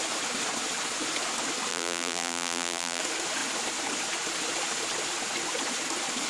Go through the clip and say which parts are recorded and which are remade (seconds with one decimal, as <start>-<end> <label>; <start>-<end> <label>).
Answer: 0.0-1.7 recorded; 1.7-3.0 remade; 3.0-6.3 recorded